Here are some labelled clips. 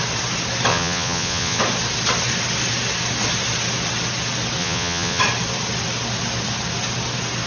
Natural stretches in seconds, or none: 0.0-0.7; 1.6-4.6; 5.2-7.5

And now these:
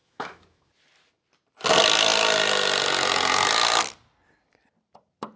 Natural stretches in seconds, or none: 0.7-5.4

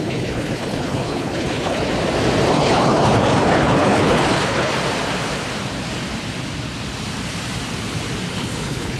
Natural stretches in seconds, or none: 1.9-2.5; 4.7-8.3